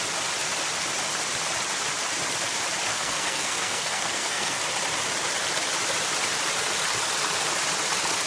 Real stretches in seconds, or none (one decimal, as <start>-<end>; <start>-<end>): 0.0-2.9; 4.6-8.3